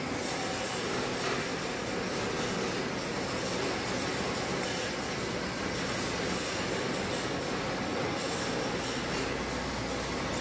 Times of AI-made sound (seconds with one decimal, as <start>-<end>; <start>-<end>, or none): none

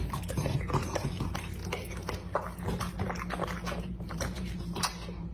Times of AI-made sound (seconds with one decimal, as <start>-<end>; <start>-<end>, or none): 0.0-1.6; 3.8-5.3

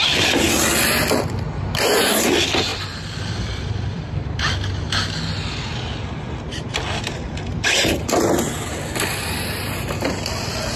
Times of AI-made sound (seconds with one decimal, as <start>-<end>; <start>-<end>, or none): 2.7-4.1; 7.5-8.0

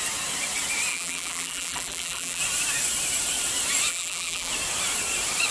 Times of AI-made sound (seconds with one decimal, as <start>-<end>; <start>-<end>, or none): 0.9-2.4; 3.9-4.5

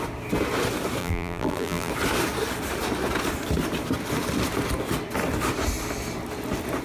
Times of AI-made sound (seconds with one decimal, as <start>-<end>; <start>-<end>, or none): 1.0-1.9

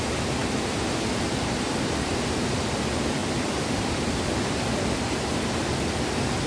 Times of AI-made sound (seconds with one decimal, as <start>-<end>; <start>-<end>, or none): 3.2-6.1